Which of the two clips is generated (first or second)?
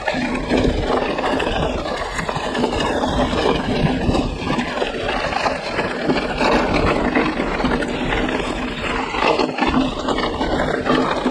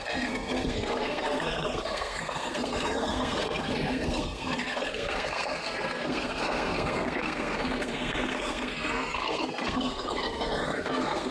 second